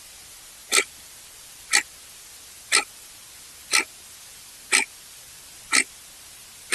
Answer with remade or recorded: recorded